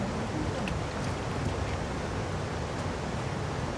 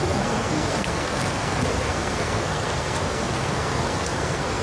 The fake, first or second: second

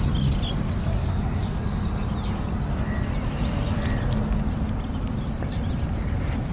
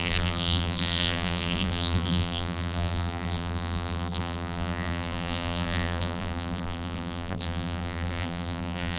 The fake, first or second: second